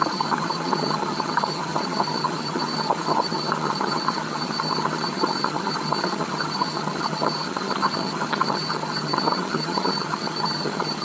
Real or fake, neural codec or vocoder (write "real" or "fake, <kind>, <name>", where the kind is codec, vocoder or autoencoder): fake, vocoder, HiFi-GAN